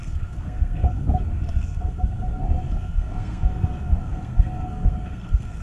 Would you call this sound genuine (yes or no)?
no